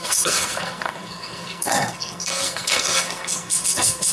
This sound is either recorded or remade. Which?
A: remade